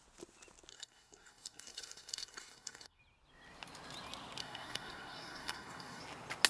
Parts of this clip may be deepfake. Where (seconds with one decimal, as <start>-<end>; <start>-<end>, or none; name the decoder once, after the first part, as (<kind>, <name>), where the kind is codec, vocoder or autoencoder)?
0.7-3.0 (codec, SNAC); 4.4-6.0